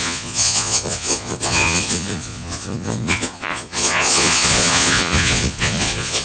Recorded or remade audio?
remade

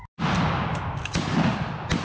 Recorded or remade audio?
recorded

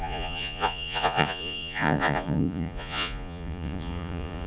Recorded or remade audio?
remade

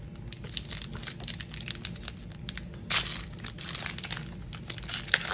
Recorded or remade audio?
recorded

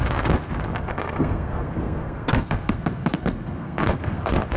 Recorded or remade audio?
remade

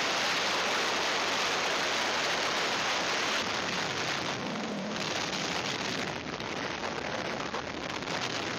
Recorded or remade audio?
recorded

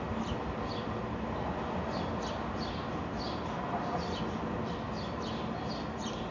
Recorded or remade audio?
recorded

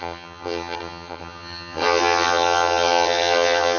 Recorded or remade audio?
remade